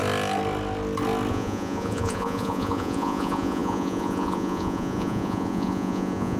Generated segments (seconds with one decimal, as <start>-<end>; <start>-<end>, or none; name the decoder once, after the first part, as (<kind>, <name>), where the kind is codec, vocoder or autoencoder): 1.3-6.4 (vocoder, Vocos)